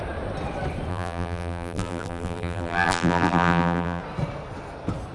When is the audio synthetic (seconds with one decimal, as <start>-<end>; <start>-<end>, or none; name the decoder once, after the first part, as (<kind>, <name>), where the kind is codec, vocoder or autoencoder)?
0.9-4.0 (vocoder, BigVGAN v2)